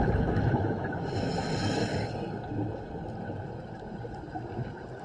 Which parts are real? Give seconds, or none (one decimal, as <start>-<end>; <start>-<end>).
1.9-5.0